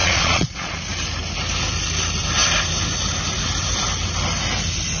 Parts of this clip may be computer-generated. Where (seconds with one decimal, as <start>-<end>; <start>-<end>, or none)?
0.0-0.7